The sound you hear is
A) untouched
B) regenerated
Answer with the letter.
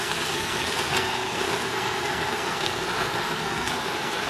B